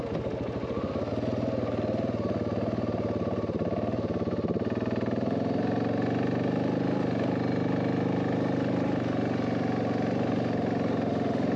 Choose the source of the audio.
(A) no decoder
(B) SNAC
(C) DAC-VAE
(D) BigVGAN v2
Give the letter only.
A